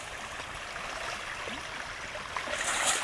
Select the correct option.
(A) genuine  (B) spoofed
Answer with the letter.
A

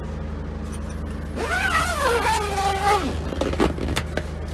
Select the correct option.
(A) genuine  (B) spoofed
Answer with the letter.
A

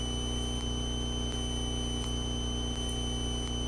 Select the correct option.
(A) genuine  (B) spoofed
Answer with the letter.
A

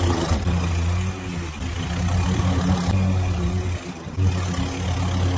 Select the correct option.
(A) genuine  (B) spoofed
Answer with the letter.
A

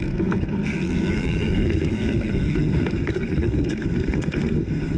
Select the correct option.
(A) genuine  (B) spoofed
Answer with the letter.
B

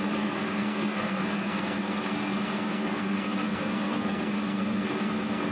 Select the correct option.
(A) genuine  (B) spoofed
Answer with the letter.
B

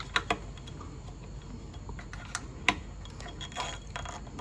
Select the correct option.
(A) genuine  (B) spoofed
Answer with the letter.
A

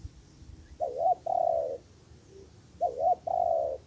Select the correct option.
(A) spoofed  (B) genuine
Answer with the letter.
B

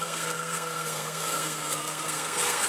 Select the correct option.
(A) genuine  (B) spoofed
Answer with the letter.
B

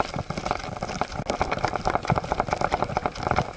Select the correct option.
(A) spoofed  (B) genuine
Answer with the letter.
B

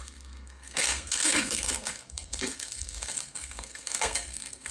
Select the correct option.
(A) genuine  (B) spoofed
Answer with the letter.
B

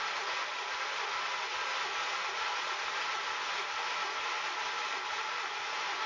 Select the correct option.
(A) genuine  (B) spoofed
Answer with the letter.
A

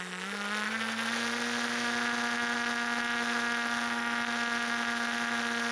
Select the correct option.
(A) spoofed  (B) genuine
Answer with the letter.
B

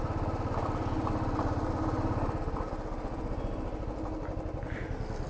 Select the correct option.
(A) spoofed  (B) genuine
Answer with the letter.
B